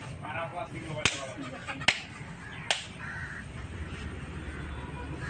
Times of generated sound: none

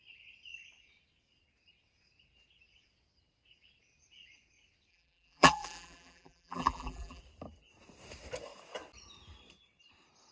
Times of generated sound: 4.9-7.2 (vocoder, BigVGAN v2)

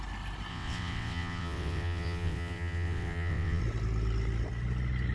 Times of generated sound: 0.5-3.6 (vocoder, WaveNeXt)

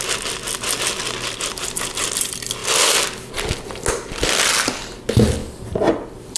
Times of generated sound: 5.4-6.4 (vocoder, BigVGAN v2)

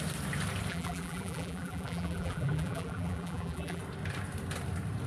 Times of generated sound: 0.7-3.8 (vocoder, BigVGAN v2)